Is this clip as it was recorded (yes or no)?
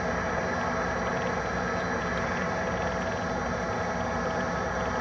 yes